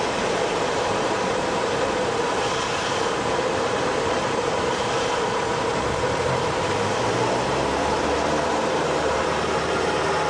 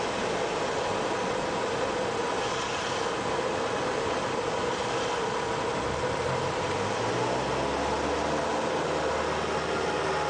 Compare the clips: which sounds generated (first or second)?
first